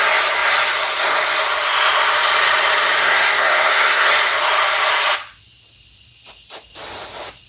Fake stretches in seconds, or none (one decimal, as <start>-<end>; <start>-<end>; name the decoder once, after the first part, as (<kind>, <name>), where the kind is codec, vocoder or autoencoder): 3.0-4.1 (codec, SNAC)